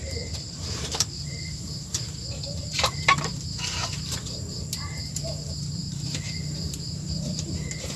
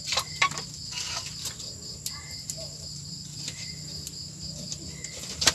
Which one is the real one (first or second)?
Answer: second